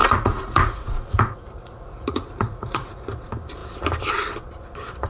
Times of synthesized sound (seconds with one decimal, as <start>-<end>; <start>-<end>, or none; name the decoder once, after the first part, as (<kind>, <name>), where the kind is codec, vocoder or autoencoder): 0.0-3.1 (vocoder, Vocos)